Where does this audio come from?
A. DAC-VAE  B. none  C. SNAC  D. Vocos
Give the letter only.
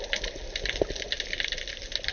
B